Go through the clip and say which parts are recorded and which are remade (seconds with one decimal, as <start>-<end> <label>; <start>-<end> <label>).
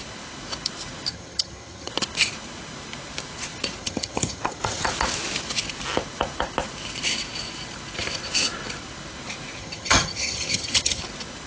0.0-1.1 recorded; 1.1-1.9 remade; 1.9-3.8 recorded; 3.8-4.9 remade; 4.9-9.6 recorded; 9.6-11.0 remade; 11.0-11.5 recorded